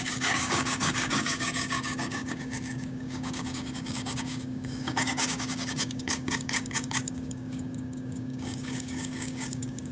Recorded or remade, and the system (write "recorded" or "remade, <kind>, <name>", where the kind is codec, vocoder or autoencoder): remade, codec, DAC